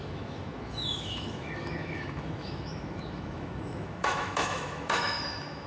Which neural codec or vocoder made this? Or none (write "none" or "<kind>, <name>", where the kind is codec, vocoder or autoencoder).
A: autoencoder, DAC-VAE